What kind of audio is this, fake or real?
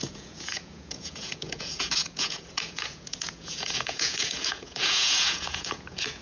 fake